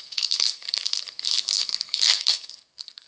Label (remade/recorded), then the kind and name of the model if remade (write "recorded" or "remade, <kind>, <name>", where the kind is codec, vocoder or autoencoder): remade, codec, SNAC